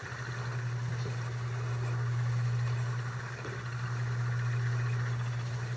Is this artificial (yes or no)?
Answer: no